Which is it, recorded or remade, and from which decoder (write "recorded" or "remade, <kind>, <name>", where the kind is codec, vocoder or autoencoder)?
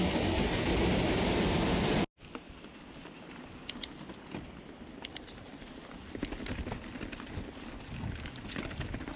recorded